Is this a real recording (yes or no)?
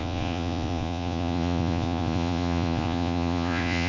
no